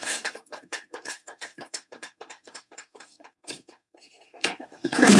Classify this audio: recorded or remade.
remade